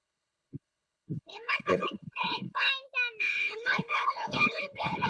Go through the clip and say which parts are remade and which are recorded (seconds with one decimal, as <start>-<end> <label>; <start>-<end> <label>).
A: 0.0-2.7 remade; 2.7-3.2 recorded; 3.2-5.1 remade